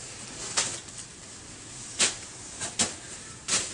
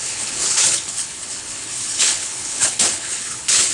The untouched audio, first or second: first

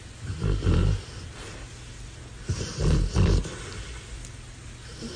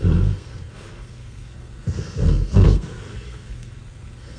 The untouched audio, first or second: first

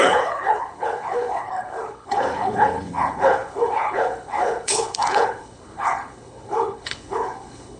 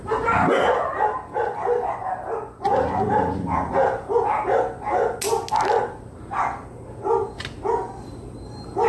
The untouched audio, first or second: second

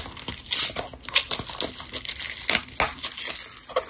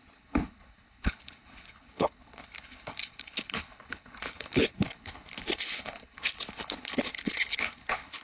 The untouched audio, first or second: first